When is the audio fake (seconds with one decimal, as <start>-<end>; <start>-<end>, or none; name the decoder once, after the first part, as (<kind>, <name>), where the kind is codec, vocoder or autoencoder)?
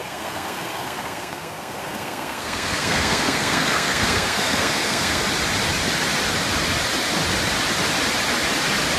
0.0-5.2 (codec, SNAC)